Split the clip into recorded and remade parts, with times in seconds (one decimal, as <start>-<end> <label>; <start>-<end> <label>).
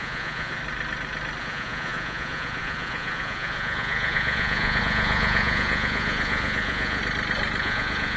0.0-0.6 remade; 0.6-1.4 recorded; 1.4-7.0 remade; 7.0-7.6 recorded; 7.6-8.2 remade